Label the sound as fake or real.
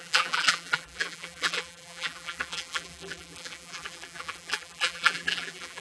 fake